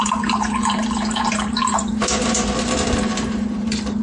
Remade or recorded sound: remade